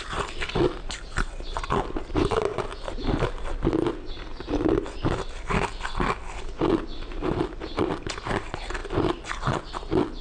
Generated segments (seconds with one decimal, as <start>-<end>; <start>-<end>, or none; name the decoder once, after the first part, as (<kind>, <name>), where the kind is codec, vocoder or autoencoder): none